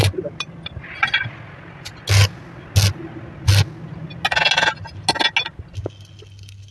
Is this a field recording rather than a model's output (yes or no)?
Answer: yes